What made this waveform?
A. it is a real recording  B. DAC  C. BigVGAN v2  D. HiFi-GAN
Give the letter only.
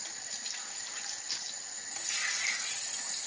A